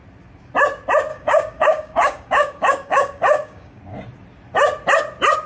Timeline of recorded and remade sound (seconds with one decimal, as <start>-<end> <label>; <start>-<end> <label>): 0.0-1.1 recorded; 1.1-3.8 remade; 3.8-5.5 recorded